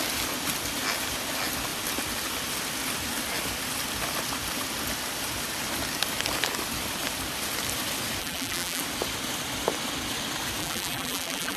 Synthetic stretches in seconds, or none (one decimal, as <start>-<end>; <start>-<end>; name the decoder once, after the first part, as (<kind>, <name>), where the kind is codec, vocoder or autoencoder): 8.2-8.8 (vocoder, BigVGAN v2); 10.6-11.6